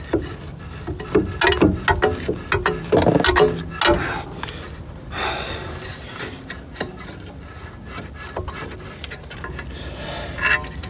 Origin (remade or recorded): recorded